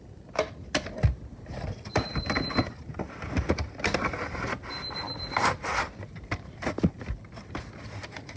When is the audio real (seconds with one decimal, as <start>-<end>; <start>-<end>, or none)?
0.0-8.4